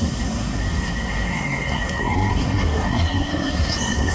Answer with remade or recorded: remade